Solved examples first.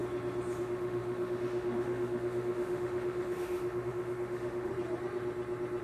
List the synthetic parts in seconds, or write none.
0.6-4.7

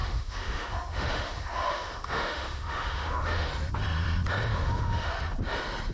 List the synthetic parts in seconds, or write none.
0.0-3.5; 4.5-5.1